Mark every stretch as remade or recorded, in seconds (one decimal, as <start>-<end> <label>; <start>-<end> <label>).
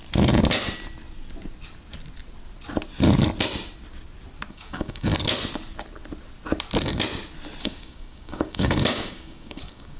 0.0-4.5 recorded; 4.5-5.1 remade; 5.1-7.6 recorded; 7.6-10.0 remade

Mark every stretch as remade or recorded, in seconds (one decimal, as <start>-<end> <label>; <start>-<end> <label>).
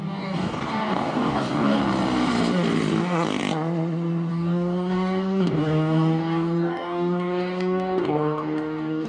0.0-1.8 remade; 1.8-4.3 recorded; 4.3-9.1 remade